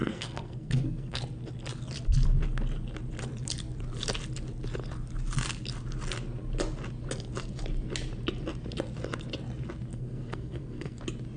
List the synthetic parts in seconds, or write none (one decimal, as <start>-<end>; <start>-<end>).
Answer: 0.0-1.2; 9.9-11.0